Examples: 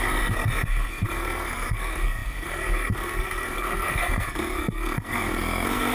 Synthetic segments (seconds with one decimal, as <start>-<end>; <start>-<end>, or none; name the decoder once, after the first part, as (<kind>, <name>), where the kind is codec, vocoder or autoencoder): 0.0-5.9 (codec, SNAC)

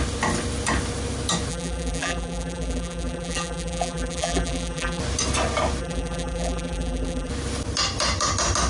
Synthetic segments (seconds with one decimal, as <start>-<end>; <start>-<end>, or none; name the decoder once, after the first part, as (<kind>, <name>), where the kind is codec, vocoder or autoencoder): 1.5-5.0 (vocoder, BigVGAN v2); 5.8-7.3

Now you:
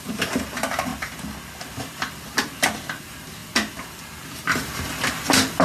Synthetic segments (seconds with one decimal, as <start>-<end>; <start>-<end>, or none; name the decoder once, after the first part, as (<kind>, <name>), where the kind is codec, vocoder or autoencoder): 0.0-0.9 (vocoder, BigVGAN v2); 1.6-3.4; 4.0-4.5

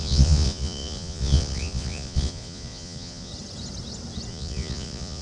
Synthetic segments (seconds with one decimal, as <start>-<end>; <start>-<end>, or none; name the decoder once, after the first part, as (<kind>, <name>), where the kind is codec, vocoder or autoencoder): 0.0-3.3 (vocoder, Vocos); 4.3-5.2

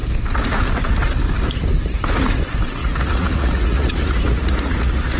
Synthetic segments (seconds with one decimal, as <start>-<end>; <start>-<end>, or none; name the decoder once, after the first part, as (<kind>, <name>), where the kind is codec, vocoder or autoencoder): 2.8-5.2 (vocoder, Vocos)

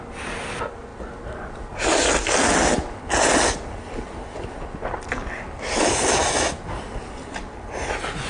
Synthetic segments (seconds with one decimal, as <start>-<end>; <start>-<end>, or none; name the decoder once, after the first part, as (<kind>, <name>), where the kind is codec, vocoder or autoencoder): none